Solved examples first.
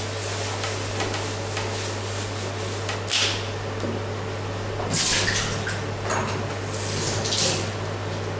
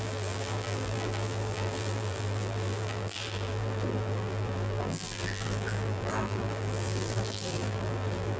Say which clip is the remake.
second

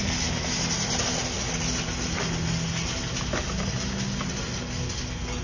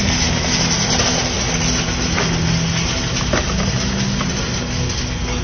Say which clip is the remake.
second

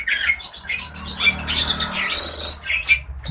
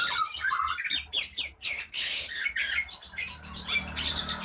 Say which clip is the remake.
second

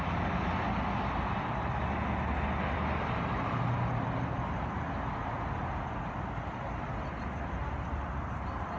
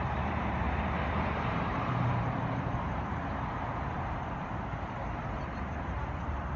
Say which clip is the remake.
second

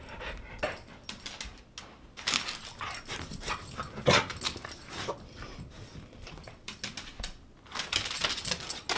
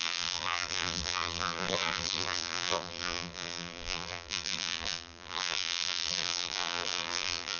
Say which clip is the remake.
second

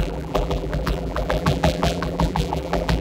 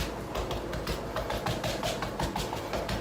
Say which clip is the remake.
first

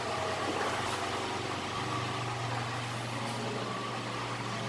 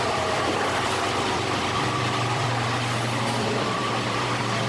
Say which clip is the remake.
second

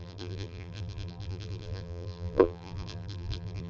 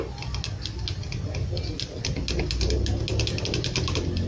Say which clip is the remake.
first